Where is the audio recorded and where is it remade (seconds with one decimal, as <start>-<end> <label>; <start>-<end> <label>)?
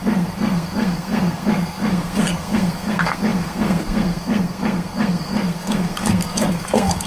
0.0-7.1 remade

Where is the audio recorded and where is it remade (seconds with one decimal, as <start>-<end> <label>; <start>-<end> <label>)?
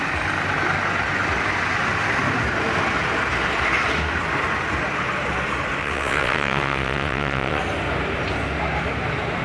0.0-5.8 recorded; 5.8-7.6 remade; 7.6-9.4 recorded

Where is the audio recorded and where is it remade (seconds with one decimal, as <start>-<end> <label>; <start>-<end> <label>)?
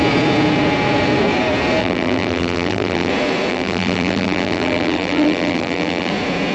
0.0-1.8 recorded; 1.8-3.1 remade; 3.1-3.5 recorded; 3.5-6.1 remade; 6.1-6.5 recorded